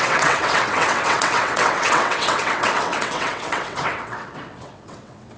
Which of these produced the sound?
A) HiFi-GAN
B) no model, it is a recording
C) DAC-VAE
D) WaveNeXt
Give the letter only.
D